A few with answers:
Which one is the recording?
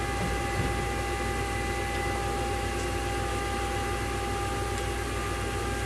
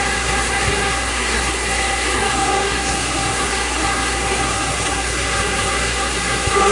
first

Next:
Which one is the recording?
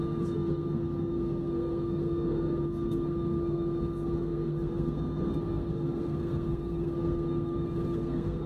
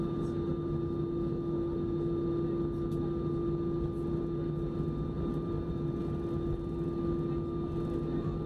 second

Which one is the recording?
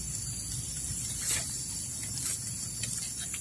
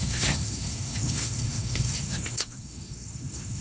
first